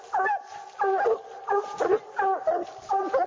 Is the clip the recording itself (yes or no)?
yes